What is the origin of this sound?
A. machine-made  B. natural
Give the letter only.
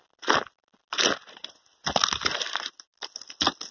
B